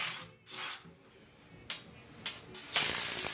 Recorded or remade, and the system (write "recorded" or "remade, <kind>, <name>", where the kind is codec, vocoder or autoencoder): recorded